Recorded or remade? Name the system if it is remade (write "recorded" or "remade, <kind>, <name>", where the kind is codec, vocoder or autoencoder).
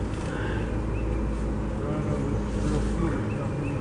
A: recorded